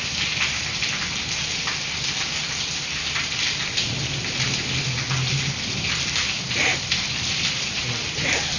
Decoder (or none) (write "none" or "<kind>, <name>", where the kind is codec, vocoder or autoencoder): none